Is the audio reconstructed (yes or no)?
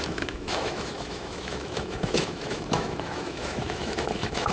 yes